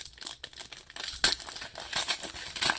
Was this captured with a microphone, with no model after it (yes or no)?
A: yes